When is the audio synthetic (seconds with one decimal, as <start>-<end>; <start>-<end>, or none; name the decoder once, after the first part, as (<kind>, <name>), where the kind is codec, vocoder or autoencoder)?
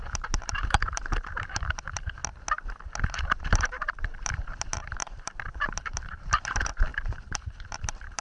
0.0-2.2 (vocoder, BigVGAN v2); 3.1-8.2